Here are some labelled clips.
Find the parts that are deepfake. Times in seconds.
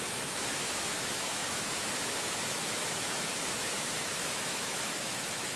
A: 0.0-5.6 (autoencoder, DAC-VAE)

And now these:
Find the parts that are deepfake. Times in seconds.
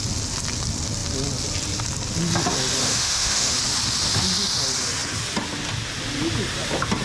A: 2.8-3.5 (autoencoder, DAC-VAE)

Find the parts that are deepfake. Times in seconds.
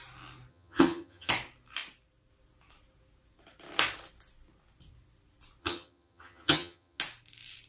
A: 0.5-1.3 (vocoder, HiFi-GAN); 5.6-7.0